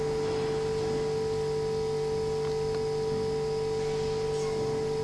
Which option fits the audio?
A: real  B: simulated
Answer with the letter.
A